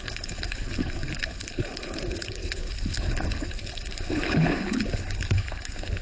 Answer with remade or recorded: remade